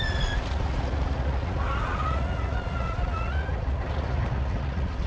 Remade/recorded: remade